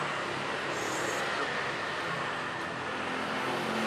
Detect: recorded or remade recorded